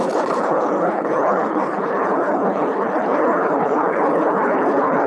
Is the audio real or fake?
fake